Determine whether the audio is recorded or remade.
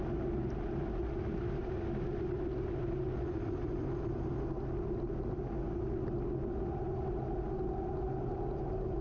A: recorded